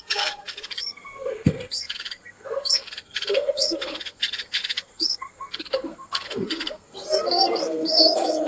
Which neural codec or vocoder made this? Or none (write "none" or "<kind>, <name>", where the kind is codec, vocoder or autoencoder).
codec, SNAC